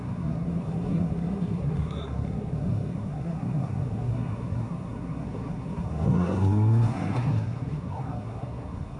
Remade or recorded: remade